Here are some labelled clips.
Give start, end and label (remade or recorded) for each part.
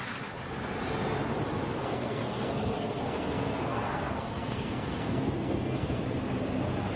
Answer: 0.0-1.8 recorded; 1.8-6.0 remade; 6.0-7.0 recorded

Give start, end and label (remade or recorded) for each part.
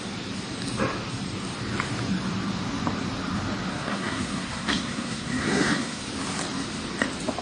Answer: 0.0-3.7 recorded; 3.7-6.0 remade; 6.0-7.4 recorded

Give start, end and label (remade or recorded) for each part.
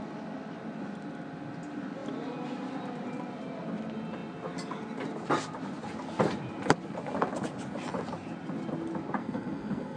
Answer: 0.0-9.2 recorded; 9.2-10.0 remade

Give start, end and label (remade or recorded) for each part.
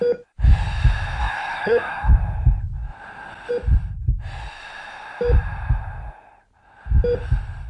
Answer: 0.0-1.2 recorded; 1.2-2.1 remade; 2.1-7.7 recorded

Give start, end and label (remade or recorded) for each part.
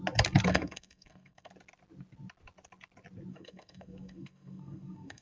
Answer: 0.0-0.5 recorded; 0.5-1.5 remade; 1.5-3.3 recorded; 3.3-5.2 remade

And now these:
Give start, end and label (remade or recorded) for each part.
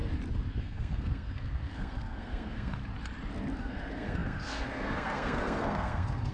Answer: 0.0-0.6 recorded; 0.6-2.8 remade; 2.8-3.6 recorded; 3.6-6.3 remade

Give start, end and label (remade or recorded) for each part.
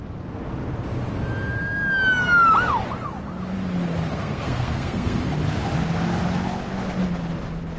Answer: 0.0-4.1 recorded; 4.1-5.2 remade; 5.2-7.8 recorded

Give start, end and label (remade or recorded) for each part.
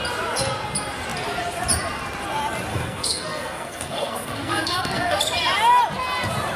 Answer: 0.0-2.7 recorded; 2.7-5.2 remade; 5.2-6.6 recorded